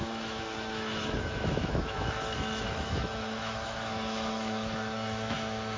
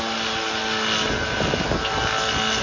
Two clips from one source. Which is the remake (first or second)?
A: first